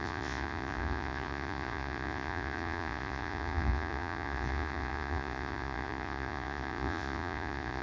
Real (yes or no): no